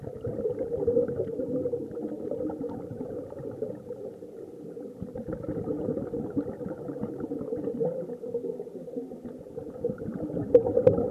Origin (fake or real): real